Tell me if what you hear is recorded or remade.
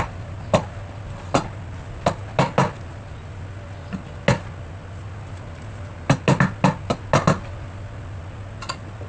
recorded